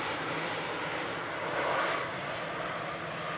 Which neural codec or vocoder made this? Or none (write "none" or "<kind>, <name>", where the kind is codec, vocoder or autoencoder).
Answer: none